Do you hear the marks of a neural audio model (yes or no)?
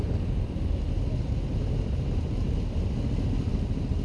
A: no